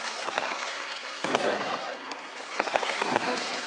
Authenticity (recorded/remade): remade